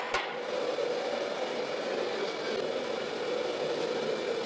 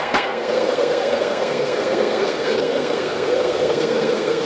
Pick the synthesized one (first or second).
second